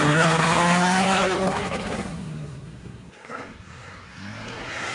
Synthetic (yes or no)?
yes